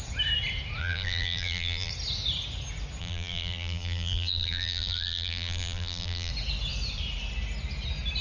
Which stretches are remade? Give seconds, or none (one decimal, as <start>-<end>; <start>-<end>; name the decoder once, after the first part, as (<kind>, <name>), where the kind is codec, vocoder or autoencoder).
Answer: 0.8-1.9 (vocoder, BigVGAN v2); 3.0-6.3